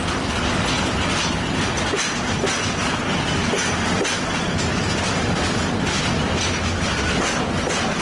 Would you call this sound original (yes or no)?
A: yes